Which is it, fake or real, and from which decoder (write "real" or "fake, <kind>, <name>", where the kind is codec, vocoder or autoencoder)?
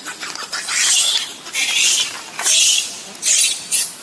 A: real